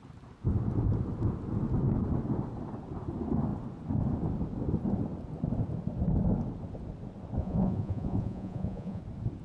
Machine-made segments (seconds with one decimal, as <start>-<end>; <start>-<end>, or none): 7.4-9.0